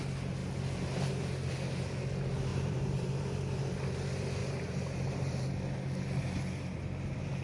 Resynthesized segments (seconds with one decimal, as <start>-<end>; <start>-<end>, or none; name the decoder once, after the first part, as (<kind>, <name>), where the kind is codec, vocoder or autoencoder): 2.5-3.2 (vocoder, BigVGAN v2); 4.4-5.5